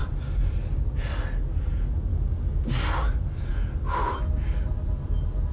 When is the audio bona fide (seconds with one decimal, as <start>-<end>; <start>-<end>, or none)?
0.0-2.1; 2.7-5.5